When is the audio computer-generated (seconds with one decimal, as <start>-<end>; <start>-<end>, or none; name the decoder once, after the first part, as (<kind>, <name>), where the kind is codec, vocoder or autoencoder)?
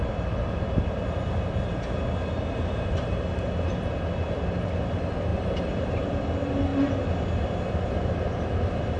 none